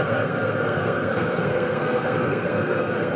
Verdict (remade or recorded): remade